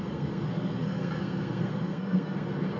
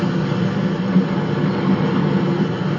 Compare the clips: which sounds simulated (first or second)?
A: first